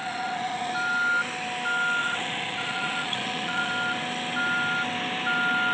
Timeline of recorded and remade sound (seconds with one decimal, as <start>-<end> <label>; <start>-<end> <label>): 0.0-0.7 remade; 0.7-2.0 recorded; 2.0-3.7 remade; 3.7-5.7 recorded